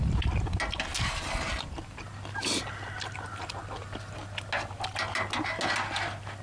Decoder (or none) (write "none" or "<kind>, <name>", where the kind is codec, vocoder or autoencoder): none